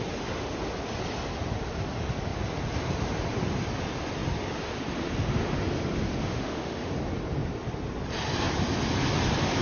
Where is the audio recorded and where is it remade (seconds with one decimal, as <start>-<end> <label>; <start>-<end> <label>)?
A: 0.0-6.2 recorded; 6.2-6.9 remade; 6.9-9.6 recorded